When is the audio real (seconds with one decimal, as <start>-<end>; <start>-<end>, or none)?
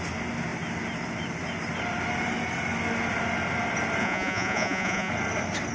0.0-4.0; 5.1-5.7